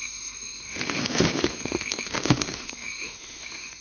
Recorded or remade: remade